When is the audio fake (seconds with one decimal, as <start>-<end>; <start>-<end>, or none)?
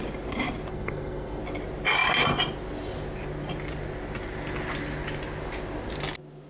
0.7-1.4